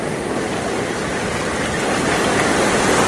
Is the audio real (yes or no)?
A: yes